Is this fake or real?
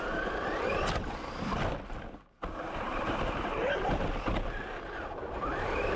fake